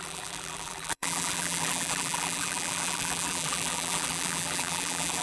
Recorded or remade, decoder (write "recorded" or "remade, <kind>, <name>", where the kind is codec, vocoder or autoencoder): remade, vocoder, BigVGAN v2